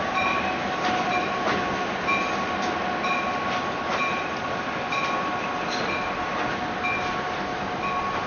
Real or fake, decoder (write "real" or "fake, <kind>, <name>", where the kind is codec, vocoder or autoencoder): real